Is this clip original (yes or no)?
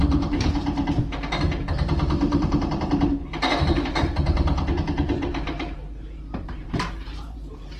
no